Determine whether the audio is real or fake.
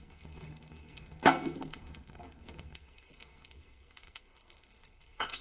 fake